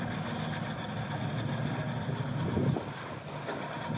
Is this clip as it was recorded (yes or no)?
yes